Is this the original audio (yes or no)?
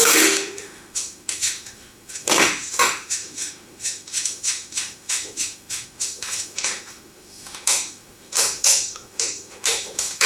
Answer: no